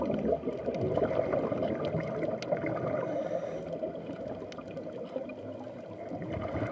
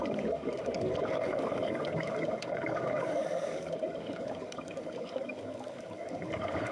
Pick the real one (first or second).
first